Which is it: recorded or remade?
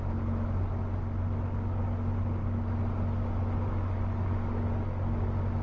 recorded